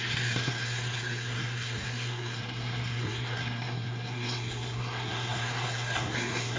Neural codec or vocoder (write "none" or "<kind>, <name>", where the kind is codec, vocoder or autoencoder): codec, SNAC